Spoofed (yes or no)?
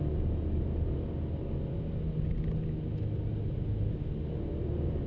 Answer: no